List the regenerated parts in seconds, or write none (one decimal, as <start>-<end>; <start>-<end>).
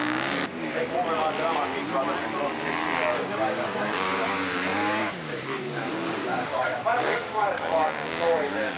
0.0-1.0; 3.1-8.8